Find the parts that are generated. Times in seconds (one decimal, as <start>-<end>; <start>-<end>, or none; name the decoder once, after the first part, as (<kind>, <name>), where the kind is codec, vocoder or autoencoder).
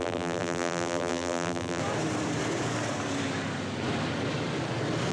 0.0-1.8 (vocoder, BigVGAN v2)